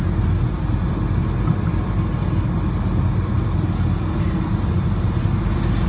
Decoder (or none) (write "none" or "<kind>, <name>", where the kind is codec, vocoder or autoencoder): none